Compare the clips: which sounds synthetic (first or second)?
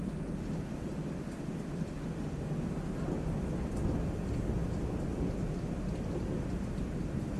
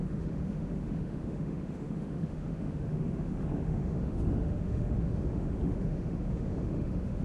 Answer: second